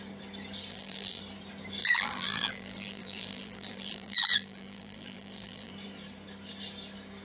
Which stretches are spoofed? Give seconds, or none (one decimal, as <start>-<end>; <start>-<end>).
0.7-1.2; 1.8-5.7